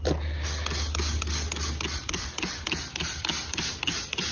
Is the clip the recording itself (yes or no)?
yes